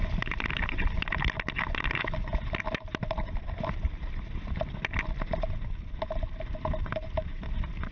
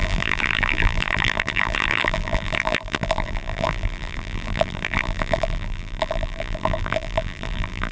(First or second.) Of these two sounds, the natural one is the first